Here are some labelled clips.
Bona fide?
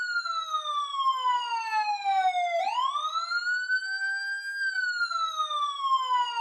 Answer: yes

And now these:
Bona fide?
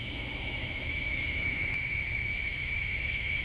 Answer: no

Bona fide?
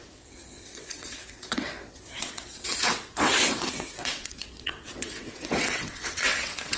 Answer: no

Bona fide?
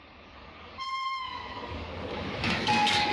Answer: no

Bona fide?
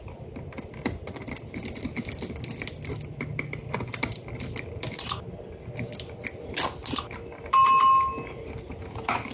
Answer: yes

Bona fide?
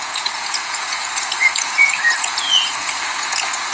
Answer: no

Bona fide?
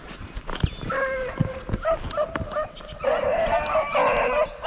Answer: yes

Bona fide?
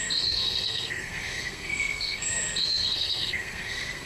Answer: no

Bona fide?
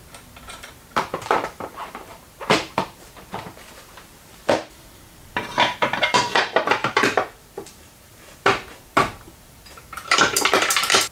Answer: no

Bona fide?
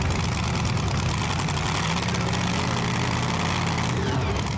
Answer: yes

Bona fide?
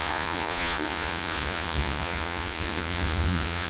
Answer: no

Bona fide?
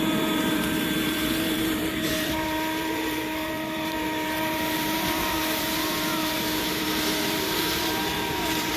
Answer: no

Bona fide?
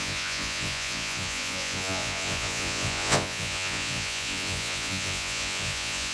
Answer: no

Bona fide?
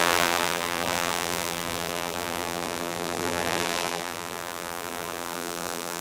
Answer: no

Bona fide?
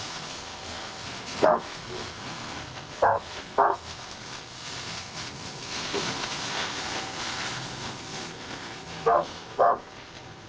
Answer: no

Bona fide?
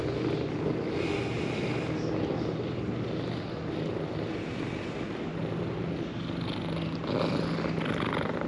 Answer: yes